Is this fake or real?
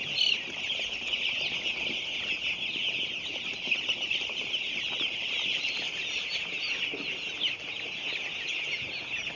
real